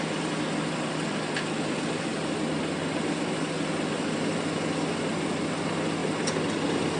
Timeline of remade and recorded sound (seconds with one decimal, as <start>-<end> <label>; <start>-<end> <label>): 0.0-7.0 recorded